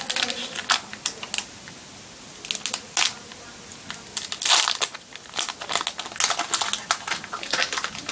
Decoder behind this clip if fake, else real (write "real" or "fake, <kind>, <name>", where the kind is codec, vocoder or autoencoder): real